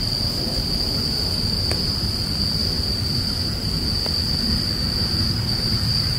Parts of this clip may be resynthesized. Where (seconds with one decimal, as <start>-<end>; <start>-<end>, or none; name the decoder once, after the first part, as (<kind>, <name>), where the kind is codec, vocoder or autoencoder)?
none